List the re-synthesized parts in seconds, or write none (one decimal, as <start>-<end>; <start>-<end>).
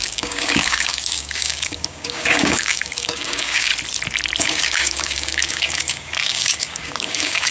0.0-3.7; 4.4-7.5